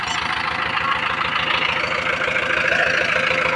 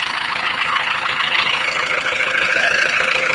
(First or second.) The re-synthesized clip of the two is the second